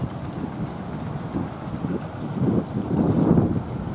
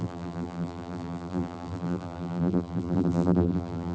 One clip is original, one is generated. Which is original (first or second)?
first